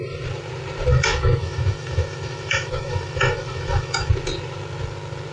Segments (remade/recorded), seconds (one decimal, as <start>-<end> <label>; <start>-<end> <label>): 0.0-0.9 recorded; 0.9-4.1 remade; 4.1-5.3 recorded